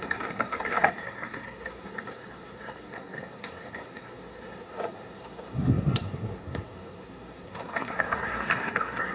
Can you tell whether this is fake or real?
fake